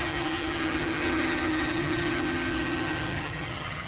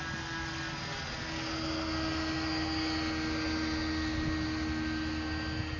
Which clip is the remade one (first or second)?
first